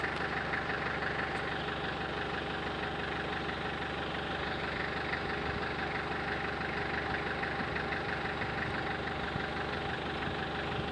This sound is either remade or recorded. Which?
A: recorded